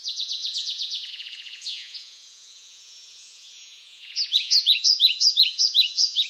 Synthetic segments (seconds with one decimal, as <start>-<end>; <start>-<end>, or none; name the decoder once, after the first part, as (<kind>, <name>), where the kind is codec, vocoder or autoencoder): 0.0-6.3 (vocoder, Vocos)